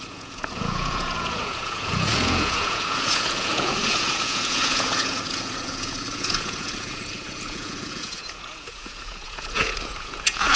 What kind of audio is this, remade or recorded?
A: remade